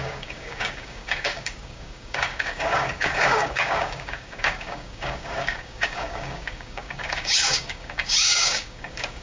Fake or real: fake